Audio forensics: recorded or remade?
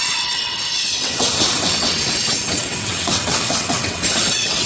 remade